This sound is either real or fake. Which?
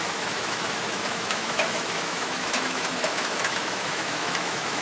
fake